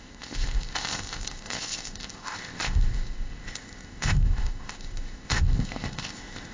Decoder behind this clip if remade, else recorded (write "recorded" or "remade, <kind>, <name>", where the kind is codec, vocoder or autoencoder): remade, codec, ZipCodec